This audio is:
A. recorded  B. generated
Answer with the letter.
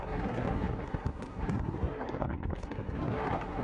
B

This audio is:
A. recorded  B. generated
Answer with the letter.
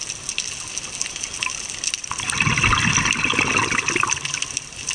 A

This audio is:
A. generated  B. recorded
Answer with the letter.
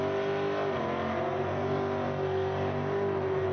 B